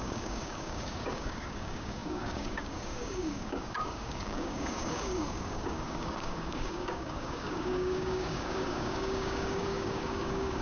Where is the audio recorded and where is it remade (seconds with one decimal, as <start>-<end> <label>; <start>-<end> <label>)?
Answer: 0.0-10.6 remade